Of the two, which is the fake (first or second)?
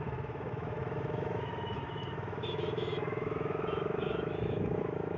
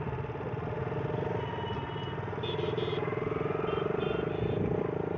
first